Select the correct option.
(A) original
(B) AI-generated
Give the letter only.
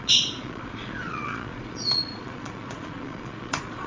B